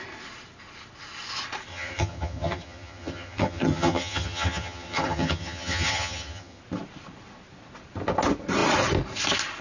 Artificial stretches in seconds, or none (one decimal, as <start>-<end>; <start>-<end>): 1.7-6.6